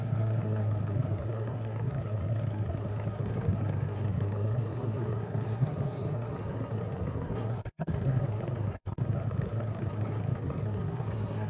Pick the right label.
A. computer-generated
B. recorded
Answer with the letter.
A